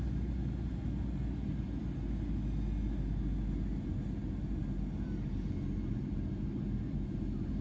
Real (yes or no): yes